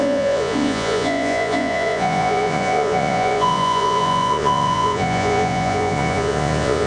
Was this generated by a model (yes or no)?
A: yes